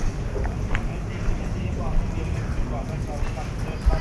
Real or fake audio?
fake